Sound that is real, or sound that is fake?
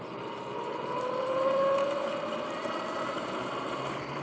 real